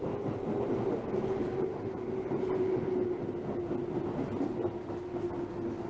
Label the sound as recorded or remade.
recorded